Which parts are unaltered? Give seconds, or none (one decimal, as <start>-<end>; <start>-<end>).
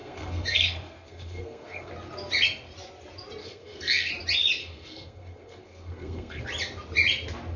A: 1.9-3.4; 4.1-4.6; 6.4-7.6